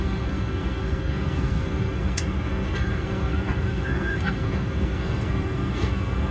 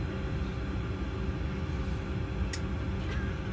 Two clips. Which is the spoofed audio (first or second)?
first